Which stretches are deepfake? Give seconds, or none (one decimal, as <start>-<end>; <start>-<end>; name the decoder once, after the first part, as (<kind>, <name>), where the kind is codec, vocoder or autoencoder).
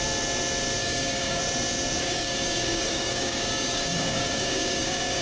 0.8-1.4 (codec, DAC); 2.0-5.2